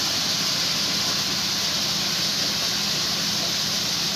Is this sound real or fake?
real